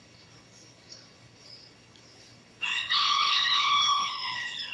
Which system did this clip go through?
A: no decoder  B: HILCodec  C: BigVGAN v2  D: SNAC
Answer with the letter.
B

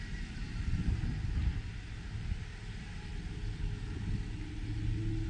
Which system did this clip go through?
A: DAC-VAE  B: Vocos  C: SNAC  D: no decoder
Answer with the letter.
D